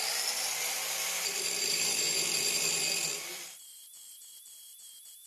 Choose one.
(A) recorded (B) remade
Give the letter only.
B